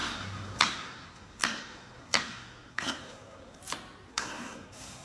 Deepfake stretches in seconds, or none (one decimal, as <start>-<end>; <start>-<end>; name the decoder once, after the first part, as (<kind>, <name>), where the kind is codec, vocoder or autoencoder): 0.0-3.6 (codec, SNAC); 4.1-5.0